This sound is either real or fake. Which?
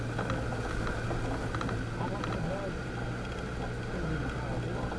real